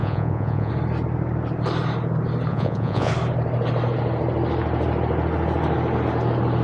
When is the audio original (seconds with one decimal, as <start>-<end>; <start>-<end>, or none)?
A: 0.7-2.5; 3.1-6.6